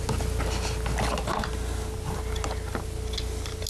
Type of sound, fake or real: real